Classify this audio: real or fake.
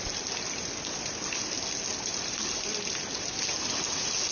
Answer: real